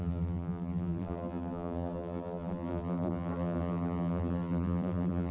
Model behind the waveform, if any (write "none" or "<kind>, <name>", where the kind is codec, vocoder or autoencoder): vocoder, BigVGAN v2